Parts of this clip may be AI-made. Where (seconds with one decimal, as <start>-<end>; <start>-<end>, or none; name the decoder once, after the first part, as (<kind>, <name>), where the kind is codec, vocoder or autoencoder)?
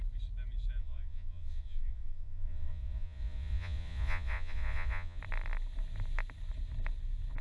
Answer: 0.8-5.2 (vocoder, Vocos)